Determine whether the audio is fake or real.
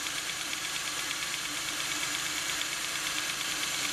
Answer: fake